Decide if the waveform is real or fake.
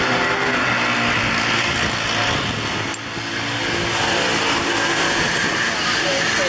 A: real